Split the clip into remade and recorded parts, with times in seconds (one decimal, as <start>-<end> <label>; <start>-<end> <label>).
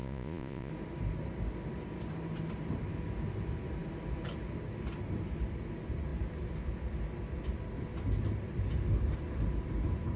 0.0-0.7 remade; 0.7-10.2 recorded